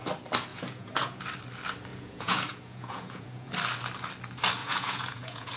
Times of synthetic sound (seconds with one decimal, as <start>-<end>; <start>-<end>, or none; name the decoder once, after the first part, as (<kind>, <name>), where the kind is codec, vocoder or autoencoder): 0.5-1.2 (vocoder, Vocos); 1.9-3.5; 4.6-5.6